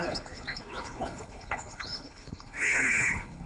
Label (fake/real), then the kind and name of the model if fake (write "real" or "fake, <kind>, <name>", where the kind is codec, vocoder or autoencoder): fake, codec, HILCodec